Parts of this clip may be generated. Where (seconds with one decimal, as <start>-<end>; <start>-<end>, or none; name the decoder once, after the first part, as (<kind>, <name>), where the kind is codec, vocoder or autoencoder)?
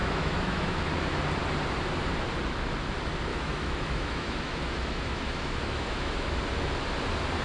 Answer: 0.0-0.9 (autoencoder, DAC-VAE); 3.3-6.4